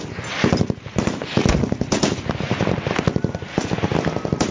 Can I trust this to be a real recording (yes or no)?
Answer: yes